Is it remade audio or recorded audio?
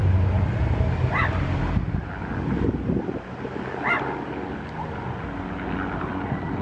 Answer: recorded